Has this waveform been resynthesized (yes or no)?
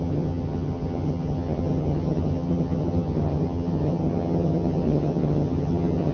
yes